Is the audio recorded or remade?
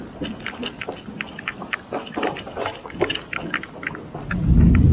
recorded